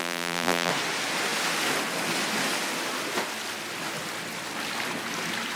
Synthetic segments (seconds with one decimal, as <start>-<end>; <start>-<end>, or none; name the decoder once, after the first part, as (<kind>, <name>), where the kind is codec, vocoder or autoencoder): 0.0-0.7 (vocoder, BigVGAN v2)